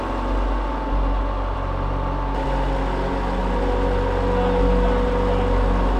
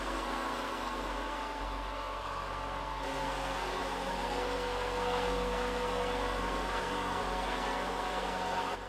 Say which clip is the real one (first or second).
first